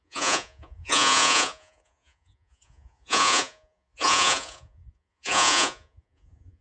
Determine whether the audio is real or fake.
fake